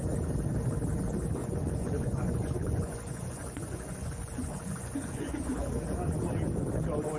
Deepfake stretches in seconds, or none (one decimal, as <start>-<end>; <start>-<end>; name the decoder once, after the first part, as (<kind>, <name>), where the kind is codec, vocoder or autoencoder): 1.4-5.5 (vocoder, Vocos)